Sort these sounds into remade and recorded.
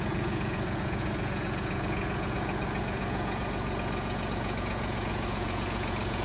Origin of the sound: remade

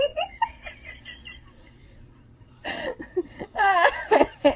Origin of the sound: remade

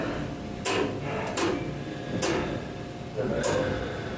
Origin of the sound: recorded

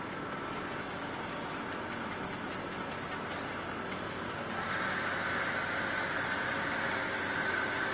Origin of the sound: recorded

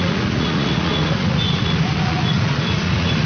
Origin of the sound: remade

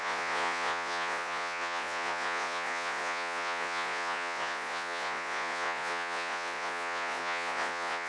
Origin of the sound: remade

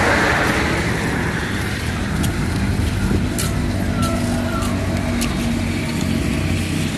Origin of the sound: recorded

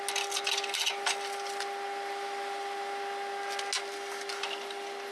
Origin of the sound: recorded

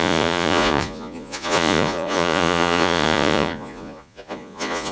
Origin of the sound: remade